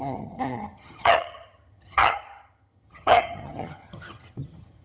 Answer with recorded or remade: remade